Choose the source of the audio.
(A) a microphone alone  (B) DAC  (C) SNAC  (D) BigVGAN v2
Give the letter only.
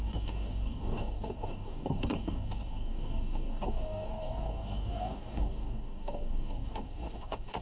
B